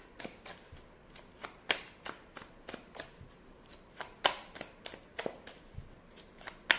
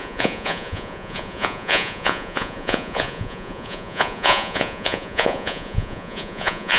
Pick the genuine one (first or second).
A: first